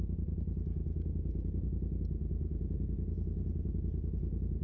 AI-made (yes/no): no